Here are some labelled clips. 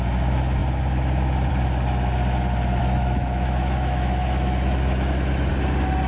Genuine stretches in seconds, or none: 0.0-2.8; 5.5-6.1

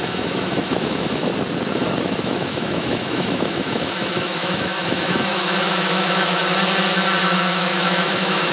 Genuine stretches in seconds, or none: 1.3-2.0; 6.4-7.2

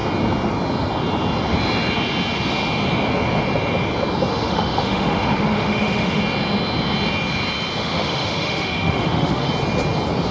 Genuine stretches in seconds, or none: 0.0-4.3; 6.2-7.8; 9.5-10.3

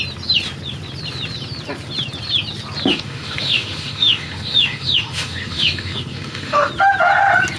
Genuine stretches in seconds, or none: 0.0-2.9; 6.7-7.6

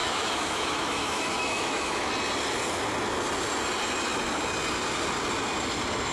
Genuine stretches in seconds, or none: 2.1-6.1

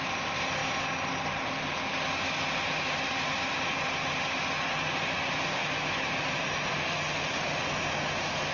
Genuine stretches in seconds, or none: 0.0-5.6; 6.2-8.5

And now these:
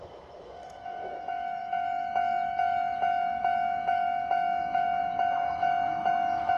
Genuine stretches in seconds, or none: none

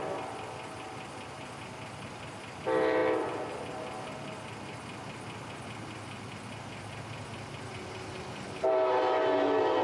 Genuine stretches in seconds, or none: 0.0-9.8